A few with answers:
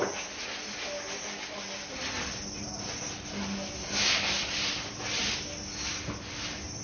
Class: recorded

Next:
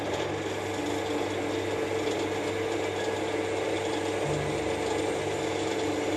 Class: recorded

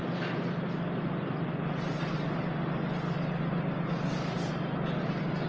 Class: recorded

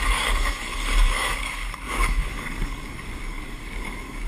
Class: remade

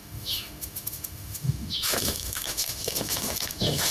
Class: remade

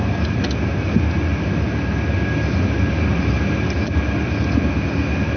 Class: recorded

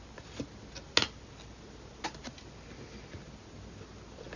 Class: recorded